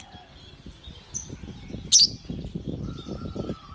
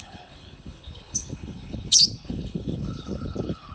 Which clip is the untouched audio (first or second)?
first